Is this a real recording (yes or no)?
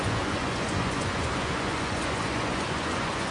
no